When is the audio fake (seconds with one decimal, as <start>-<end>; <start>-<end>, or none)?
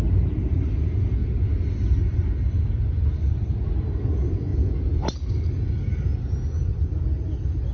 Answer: 4.5-5.0